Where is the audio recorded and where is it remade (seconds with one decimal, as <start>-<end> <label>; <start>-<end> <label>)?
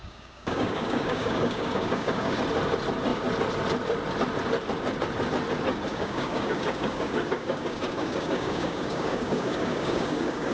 0.0-2.4 remade; 2.4-5.9 recorded; 5.9-10.5 remade